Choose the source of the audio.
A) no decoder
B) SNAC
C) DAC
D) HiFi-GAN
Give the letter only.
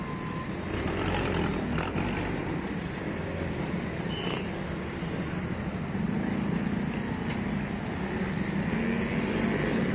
A